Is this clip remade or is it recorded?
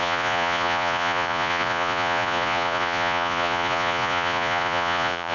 remade